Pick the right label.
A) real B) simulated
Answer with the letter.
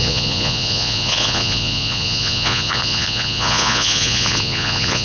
B